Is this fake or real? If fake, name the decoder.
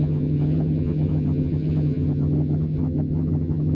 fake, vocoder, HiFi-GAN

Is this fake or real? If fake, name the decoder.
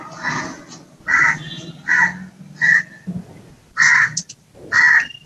real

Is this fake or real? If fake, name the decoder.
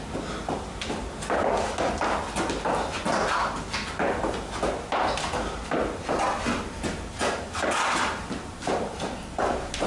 real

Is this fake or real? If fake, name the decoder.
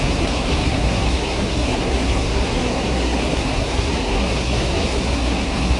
fake, codec, SNAC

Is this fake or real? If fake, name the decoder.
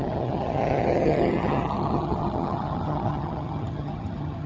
fake, vocoder, HiFi-GAN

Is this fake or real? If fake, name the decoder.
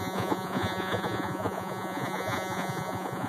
fake, vocoder, Vocos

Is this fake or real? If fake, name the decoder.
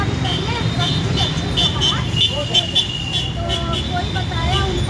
real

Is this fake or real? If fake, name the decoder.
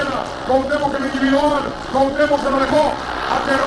fake, vocoder, Vocos